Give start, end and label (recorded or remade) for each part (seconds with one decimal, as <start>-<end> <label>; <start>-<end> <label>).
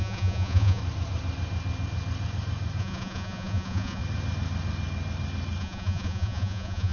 0.0-0.8 remade; 0.8-2.8 recorded; 2.8-4.0 remade; 4.0-5.6 recorded; 5.6-6.9 remade